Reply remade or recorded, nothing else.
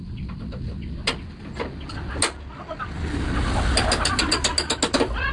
recorded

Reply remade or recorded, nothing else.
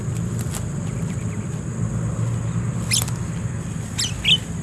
recorded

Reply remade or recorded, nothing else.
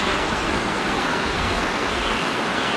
remade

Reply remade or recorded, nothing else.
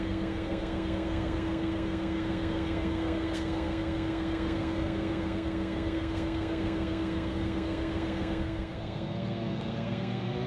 remade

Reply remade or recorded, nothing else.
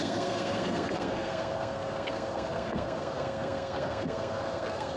remade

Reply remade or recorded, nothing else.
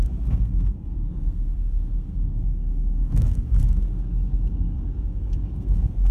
remade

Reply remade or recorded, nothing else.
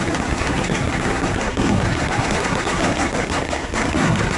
remade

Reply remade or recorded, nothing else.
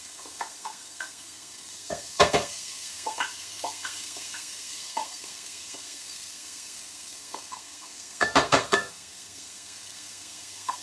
remade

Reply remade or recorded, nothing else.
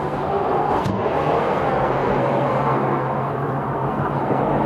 remade